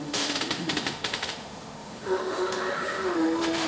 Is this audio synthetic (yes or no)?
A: yes